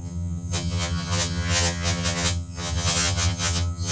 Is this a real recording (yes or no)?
no